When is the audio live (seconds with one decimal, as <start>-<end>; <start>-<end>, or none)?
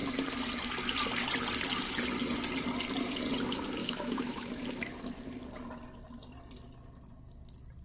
0.0-3.8; 4.5-7.8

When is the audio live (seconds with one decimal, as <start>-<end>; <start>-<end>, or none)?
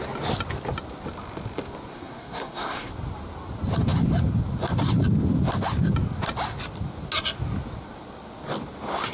0.0-1.9; 2.9-9.1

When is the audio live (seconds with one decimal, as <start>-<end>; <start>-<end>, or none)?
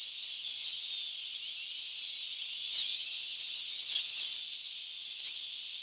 0.0-0.4; 0.9-2.8; 4.2-5.8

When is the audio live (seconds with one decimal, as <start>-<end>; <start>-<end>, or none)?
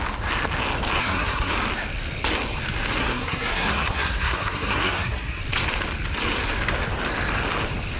0.0-1.0; 1.5-3.0; 5.4-8.0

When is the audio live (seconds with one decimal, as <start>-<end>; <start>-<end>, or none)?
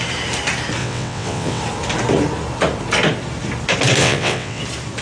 0.0-0.8; 1.6-4.0; 4.6-5.0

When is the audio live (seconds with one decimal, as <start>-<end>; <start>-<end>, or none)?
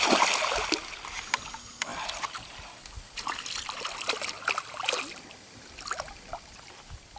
0.0-7.2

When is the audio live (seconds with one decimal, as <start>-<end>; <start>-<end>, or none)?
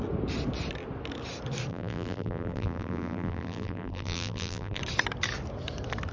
0.0-1.7; 4.8-6.1